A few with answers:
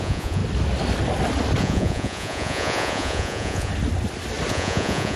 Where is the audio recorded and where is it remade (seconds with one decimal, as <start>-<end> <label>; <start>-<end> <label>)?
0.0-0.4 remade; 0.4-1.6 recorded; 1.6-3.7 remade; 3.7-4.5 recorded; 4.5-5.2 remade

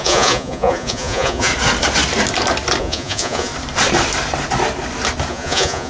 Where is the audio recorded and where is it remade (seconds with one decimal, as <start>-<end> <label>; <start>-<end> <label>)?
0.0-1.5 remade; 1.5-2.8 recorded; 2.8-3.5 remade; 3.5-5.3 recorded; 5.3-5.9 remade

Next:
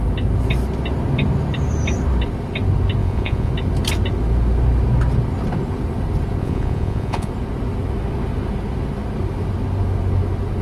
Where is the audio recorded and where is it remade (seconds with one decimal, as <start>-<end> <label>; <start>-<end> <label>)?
0.0-3.0 recorded; 3.0-3.5 remade; 3.5-6.4 recorded; 6.4-7.3 remade; 7.3-10.6 recorded

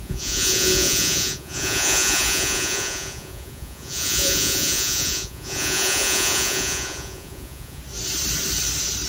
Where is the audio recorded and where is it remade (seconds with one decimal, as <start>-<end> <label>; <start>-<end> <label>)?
0.0-7.8 remade; 7.8-9.1 recorded

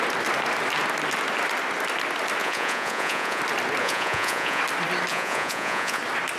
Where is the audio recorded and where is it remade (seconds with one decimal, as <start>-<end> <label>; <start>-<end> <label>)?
0.0-2.4 recorded; 2.4-3.4 remade; 3.4-3.8 recorded; 3.8-4.6 remade; 4.6-5.1 recorded; 5.1-6.0 remade; 6.0-6.4 recorded

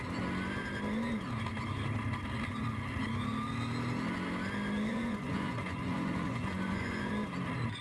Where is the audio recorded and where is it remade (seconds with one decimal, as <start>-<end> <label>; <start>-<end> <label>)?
0.0-4.9 recorded; 4.9-7.1 remade; 7.1-7.8 recorded